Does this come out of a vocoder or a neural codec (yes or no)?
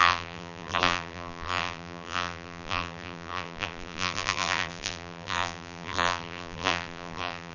yes